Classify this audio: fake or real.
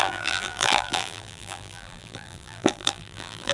fake